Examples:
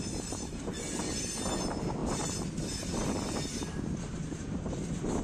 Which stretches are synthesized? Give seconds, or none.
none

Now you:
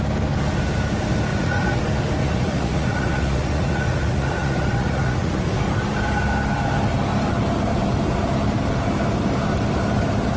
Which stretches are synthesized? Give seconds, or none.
1.3-1.8 (vocoder, Vocos); 2.2-5.5